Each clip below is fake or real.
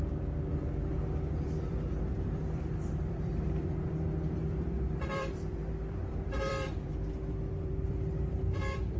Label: fake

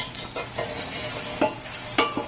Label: real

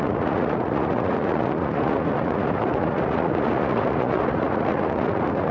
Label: fake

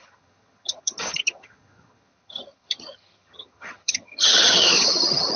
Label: fake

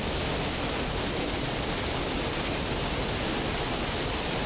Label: real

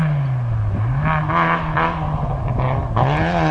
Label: real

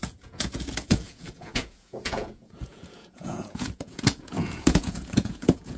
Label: fake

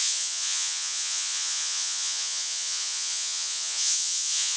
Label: fake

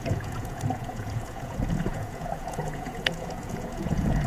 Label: fake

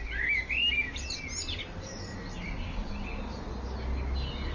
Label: real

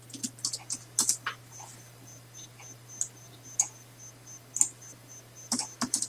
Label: real